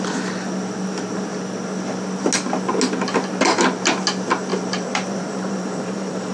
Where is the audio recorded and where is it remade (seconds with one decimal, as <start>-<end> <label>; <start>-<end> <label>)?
0.0-4.5 recorded; 4.5-6.3 remade